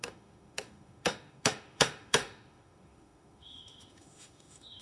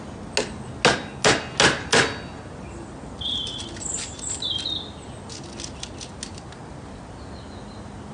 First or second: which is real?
second